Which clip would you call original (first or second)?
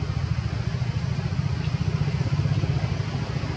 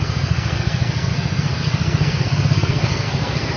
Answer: first